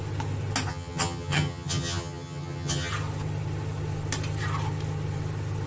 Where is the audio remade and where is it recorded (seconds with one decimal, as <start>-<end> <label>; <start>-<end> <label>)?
0.0-0.7 recorded; 0.7-2.9 remade; 2.9-5.7 recorded